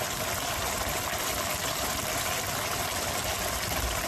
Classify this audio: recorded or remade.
recorded